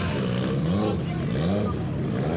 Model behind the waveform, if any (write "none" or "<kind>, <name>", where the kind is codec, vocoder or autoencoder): none